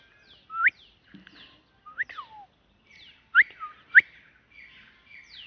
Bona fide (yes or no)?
yes